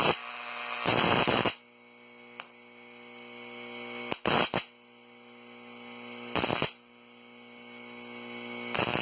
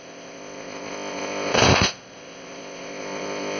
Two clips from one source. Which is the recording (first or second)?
first